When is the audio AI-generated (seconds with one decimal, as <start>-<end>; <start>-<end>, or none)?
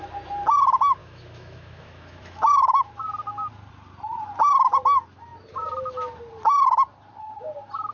1.0-3.0